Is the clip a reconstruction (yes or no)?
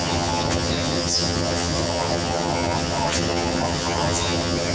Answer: yes